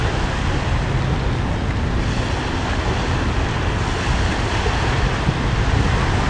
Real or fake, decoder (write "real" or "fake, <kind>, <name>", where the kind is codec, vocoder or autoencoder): real